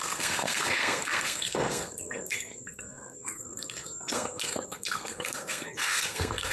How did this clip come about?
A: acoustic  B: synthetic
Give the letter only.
B